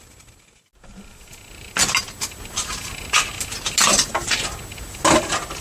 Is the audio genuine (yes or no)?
yes